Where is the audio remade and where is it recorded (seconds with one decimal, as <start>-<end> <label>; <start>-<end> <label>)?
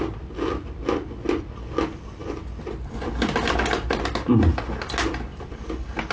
0.0-6.1 recorded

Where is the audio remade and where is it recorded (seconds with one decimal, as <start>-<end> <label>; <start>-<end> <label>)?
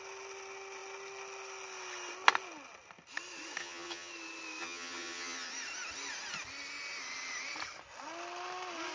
0.0-3.6 recorded; 3.6-4.1 remade; 4.1-4.6 recorded; 4.6-5.5 remade; 5.5-8.9 recorded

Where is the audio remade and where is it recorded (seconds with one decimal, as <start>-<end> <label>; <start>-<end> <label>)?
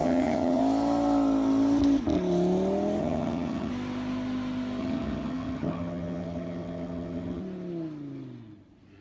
0.0-0.6 remade; 0.6-3.0 recorded; 3.0-3.7 remade; 3.7-4.8 recorded; 4.8-7.4 remade; 7.4-9.0 recorded